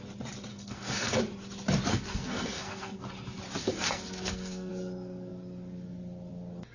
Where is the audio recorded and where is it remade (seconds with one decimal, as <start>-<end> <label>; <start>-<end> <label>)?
0.0-0.5 recorded; 0.5-1.2 remade; 1.2-1.9 recorded; 1.9-3.0 remade; 3.0-3.6 recorded; 3.6-4.7 remade; 4.7-6.7 recorded